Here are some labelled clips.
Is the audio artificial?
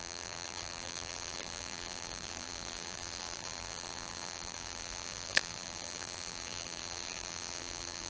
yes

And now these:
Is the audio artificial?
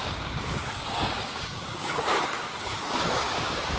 yes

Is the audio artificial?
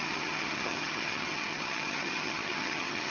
yes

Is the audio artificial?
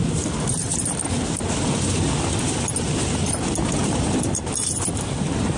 yes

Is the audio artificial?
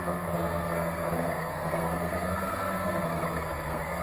yes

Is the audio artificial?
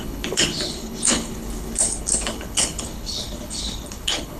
yes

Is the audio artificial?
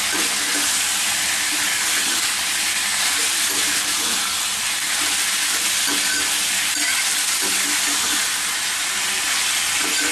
no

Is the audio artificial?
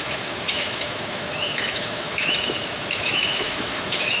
yes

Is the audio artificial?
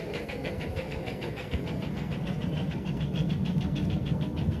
yes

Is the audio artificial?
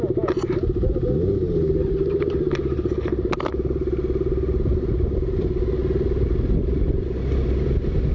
no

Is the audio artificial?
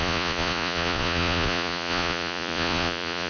yes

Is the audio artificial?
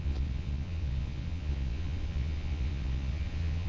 yes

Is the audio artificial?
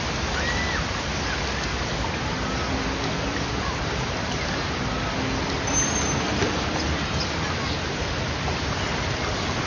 no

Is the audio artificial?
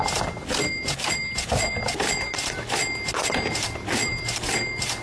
no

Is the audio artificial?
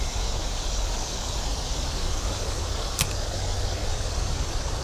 yes